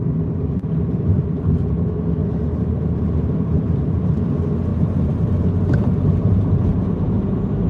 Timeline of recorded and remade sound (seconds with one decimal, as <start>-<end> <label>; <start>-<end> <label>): 0.0-2.2 recorded; 2.2-4.2 remade; 4.2-4.7 recorded; 4.7-5.5 remade; 5.5-6.3 recorded; 6.3-7.7 remade